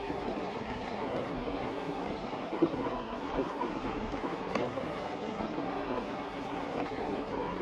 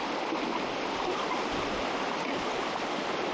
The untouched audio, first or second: second